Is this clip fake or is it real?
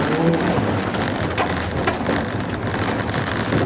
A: real